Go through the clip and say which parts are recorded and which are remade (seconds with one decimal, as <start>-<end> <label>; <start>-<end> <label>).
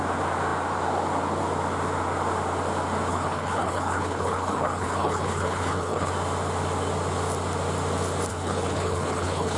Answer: 0.0-3.1 recorded; 3.1-6.1 remade; 6.1-8.3 recorded; 8.3-9.6 remade